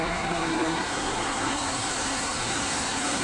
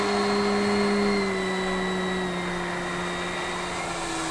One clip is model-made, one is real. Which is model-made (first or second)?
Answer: first